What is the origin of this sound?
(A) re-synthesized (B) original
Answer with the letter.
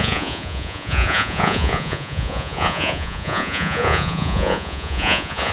A